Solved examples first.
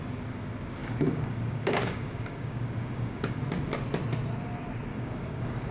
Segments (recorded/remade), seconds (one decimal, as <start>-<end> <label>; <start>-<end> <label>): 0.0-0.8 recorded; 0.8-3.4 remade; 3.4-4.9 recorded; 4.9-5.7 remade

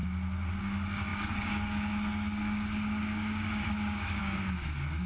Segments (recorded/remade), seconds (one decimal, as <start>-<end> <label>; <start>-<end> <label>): 0.0-0.6 recorded; 0.6-5.1 remade

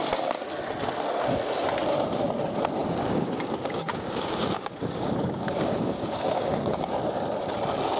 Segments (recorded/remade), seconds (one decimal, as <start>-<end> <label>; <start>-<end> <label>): 0.0-2.8 recorded; 2.8-7.0 remade; 7.0-8.0 recorded

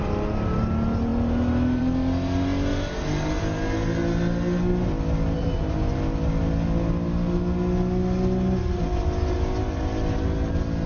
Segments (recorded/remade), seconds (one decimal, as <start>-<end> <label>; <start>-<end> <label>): 0.0-10.9 recorded

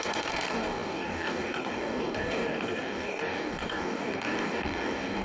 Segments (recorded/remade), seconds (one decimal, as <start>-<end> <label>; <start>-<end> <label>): 0.0-5.2 remade

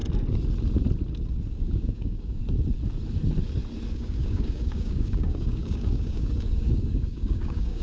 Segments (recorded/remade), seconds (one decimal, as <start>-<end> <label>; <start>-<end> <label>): 0.0-1.5 recorded; 1.5-2.4 remade; 2.4-3.9 recorded; 3.9-7.8 remade